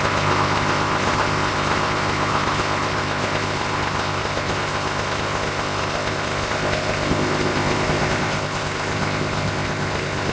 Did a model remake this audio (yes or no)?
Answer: yes